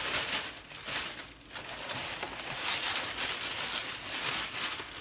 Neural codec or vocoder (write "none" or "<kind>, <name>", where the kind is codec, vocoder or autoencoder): none